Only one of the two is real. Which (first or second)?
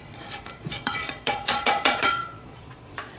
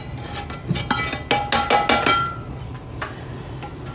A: second